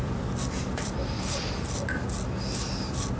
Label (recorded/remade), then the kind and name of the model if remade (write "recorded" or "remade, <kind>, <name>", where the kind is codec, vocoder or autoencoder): remade, vocoder, BigVGAN v2